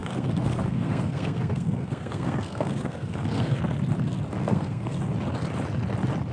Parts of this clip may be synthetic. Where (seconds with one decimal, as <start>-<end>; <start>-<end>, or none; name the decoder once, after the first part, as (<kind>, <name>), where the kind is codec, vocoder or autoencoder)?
0.0-3.6 (codec, SNAC); 4.4-5.0